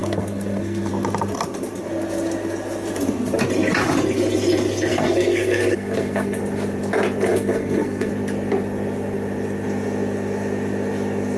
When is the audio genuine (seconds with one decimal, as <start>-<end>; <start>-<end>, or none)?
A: 0.9-4.9; 6.4-7.3; 8.1-11.4